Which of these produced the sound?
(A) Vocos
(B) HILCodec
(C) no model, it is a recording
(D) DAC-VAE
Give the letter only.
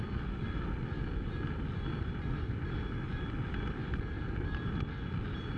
C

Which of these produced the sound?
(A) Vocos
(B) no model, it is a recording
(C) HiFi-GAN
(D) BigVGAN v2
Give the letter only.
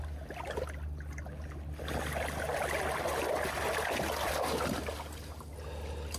B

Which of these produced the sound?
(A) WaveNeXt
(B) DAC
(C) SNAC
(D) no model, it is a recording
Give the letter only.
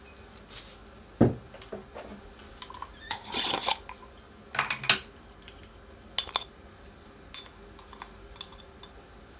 D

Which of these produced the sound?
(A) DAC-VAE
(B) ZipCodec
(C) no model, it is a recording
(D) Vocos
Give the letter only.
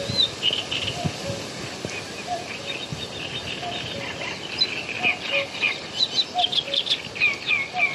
C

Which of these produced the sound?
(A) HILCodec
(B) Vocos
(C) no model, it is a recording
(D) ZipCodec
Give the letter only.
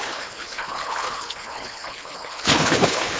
A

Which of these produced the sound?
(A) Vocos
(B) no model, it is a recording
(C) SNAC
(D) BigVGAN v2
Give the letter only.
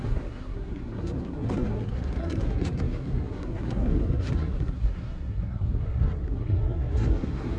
C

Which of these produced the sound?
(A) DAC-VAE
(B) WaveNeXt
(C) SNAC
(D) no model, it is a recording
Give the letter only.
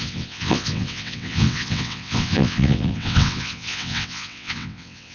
B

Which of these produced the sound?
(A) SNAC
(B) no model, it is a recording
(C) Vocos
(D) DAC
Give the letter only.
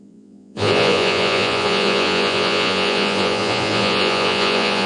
C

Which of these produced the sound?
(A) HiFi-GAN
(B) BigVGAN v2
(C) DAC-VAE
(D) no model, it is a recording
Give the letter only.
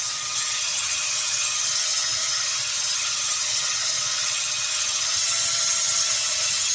A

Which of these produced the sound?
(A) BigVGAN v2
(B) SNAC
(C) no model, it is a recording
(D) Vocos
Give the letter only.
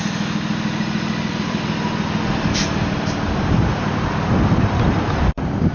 C